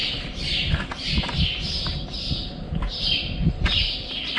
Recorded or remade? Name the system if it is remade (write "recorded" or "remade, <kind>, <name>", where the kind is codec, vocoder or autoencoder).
remade, vocoder, BigVGAN v2